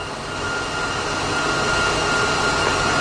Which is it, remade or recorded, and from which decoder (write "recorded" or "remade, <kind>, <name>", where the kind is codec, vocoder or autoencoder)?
recorded